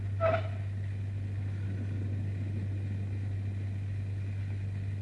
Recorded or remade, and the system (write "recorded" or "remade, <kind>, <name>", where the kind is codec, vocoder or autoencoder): recorded